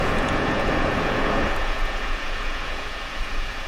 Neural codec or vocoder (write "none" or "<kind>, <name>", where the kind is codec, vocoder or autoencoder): vocoder, Vocos